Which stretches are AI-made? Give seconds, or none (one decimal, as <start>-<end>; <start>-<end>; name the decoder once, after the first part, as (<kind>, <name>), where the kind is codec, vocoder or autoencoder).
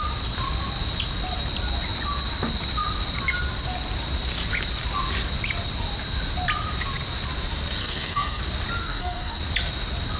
7.8-8.4 (codec, SNAC); 8.8-9.4